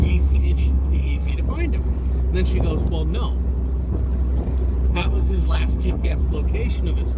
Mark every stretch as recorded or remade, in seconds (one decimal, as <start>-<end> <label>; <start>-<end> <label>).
0.0-1.3 remade; 1.3-4.9 recorded; 4.9-6.2 remade; 6.2-7.2 recorded

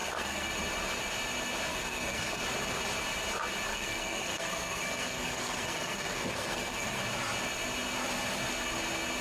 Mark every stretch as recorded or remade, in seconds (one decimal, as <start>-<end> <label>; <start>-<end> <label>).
0.0-0.5 remade; 0.5-1.7 recorded; 1.7-2.4 remade; 2.4-3.7 recorded; 3.7-7.0 remade; 7.0-9.2 recorded

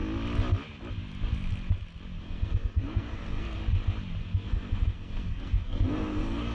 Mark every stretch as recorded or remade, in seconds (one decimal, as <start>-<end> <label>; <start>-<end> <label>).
0.0-2.2 recorded; 2.2-3.6 remade; 3.6-4.2 recorded; 4.2-6.5 remade